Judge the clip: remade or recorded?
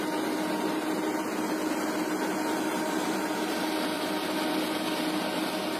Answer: recorded